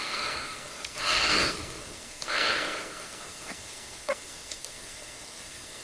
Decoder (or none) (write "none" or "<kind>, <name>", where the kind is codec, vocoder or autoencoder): codec, SNAC